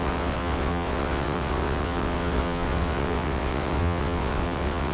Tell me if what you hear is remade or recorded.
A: remade